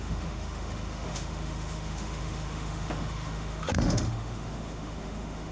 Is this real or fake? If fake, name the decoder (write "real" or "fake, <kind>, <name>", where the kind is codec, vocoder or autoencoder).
fake, autoencoder, DAC-VAE